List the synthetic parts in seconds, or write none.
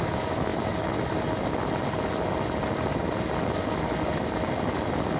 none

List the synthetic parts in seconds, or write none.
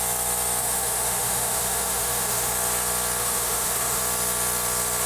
0.6-2.5 (autoencoder, DAC-VAE); 3.2-4.0